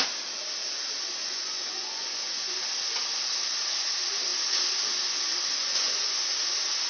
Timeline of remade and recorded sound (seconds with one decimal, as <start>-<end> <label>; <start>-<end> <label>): 0.0-1.2 recorded; 1.2-2.6 remade; 2.6-5.6 recorded; 5.6-6.3 remade; 6.3-6.9 recorded